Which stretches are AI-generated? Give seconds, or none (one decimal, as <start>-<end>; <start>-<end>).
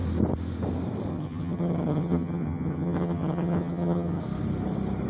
1.1-4.2